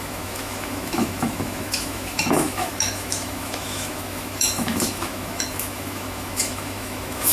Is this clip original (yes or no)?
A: no